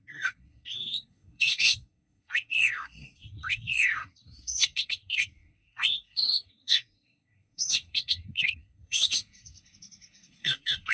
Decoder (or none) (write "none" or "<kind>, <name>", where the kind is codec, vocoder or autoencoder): codec, SNAC